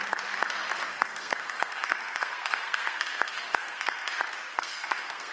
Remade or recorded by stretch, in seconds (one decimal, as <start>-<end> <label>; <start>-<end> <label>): 0.0-0.9 recorded; 0.9-4.1 remade; 4.1-4.5 recorded; 4.5-5.3 remade